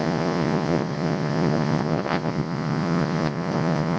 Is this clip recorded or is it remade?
remade